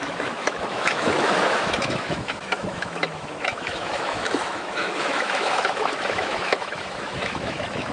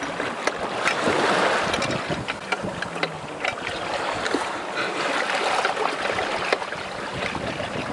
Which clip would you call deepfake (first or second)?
first